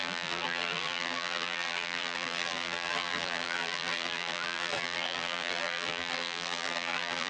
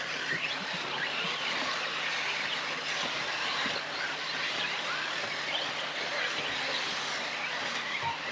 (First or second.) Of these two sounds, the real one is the second